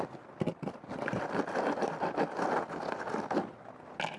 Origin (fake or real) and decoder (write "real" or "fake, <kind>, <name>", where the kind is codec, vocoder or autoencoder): real